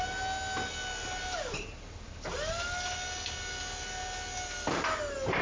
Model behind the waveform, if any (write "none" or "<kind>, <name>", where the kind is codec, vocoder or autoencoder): none